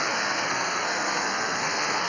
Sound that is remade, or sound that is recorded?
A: remade